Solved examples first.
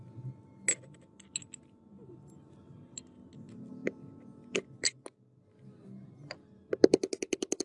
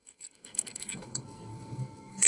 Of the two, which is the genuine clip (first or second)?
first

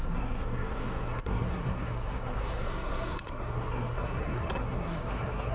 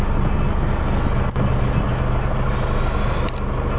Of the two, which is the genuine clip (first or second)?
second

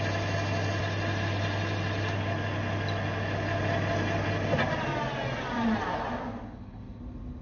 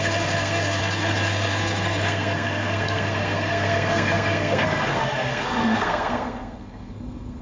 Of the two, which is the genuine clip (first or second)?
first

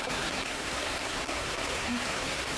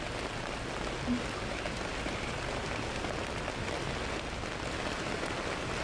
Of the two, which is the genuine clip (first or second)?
second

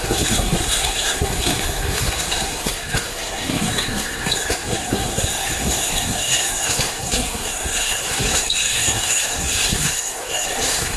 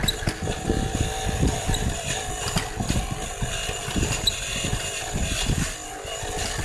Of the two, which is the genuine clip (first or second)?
second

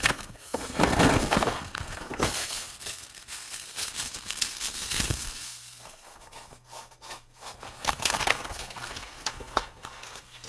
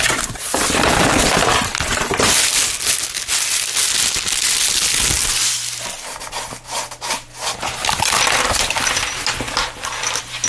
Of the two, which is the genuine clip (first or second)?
second